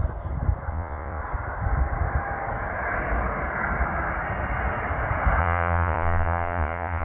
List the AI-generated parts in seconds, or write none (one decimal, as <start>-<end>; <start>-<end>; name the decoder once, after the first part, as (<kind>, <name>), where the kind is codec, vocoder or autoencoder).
0.7-1.2 (vocoder, Vocos); 5.4-7.0

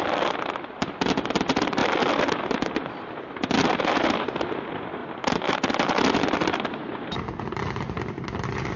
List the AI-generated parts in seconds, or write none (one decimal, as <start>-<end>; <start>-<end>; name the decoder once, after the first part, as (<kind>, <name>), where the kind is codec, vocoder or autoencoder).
none

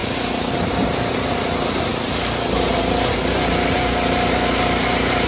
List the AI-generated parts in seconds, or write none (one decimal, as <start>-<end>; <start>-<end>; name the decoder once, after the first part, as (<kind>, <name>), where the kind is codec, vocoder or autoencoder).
none

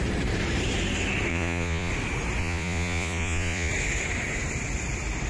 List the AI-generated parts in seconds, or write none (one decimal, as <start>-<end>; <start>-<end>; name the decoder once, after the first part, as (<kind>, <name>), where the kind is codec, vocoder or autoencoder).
1.3-1.9 (vocoder, Vocos); 2.4-3.7

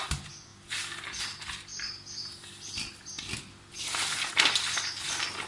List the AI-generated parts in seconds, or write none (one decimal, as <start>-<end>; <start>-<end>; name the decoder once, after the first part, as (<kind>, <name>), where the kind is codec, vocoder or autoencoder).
none